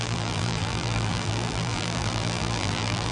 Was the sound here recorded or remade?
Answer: remade